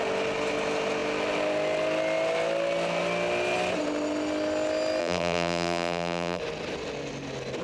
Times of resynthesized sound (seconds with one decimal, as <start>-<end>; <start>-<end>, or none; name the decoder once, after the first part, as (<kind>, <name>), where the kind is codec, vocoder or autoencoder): 5.0-6.4 (vocoder, BigVGAN v2)